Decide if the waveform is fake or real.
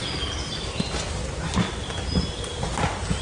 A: real